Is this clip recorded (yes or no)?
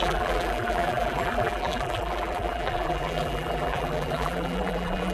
no